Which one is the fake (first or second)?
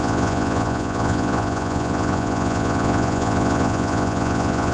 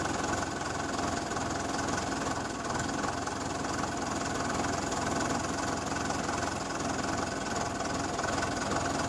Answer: first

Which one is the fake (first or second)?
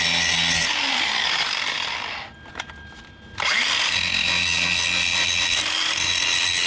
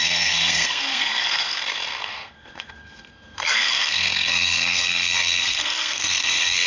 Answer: second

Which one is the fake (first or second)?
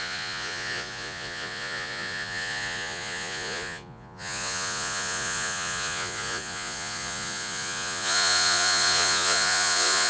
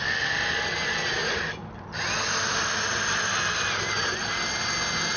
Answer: first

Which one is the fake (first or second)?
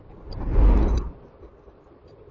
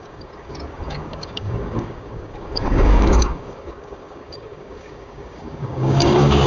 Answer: second